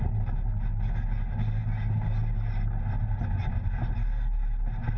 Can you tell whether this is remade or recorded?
recorded